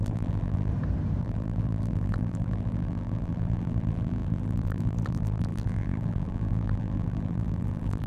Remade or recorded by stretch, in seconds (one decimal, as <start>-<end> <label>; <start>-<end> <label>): 0.0-0.7 remade; 0.7-1.2 recorded; 1.2-8.1 remade

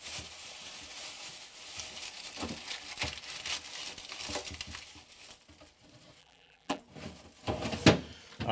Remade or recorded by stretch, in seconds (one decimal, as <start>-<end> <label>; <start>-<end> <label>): 0.0-6.2 recorded; 6.2-6.8 remade; 6.8-8.5 recorded